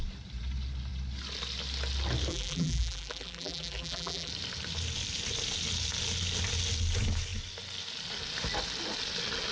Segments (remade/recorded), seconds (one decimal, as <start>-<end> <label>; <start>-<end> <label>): 0.0-2.3 recorded; 2.3-4.3 remade; 4.3-9.5 recorded